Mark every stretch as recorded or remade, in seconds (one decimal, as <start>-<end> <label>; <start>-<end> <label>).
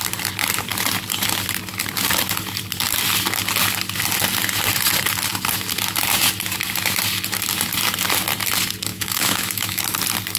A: 0.0-8.9 recorded; 8.9-9.8 remade; 9.8-10.4 recorded